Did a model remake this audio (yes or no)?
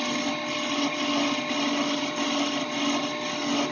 no